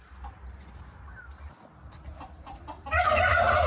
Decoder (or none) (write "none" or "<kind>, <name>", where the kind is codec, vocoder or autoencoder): none